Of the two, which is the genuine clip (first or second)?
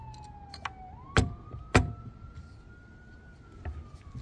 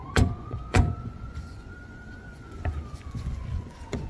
first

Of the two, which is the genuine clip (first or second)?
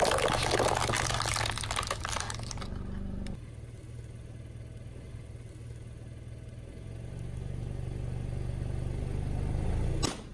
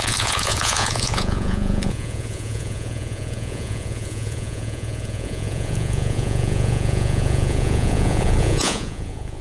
first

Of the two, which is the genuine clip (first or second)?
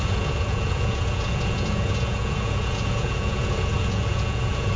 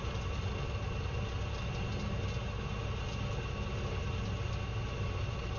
second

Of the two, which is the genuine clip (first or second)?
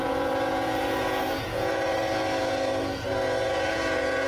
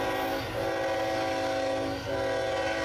second